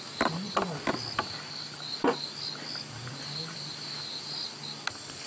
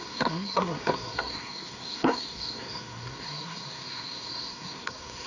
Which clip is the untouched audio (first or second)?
first